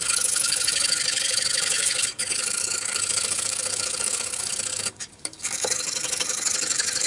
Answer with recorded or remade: remade